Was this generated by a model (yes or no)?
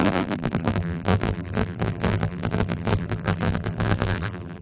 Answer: yes